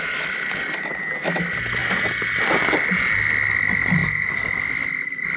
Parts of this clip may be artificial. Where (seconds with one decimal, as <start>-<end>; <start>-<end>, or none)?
none